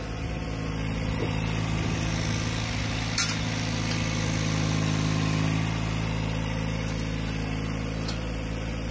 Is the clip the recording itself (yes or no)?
yes